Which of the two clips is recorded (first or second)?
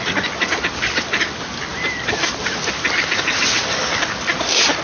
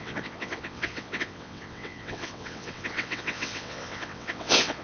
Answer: first